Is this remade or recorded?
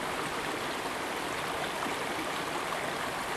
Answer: recorded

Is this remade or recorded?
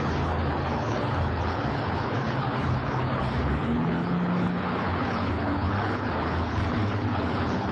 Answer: remade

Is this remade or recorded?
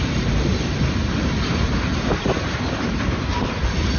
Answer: remade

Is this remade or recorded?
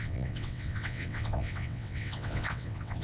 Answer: remade